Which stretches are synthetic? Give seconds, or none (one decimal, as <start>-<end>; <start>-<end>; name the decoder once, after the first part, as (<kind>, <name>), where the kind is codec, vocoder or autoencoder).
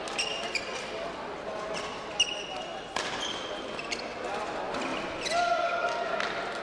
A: none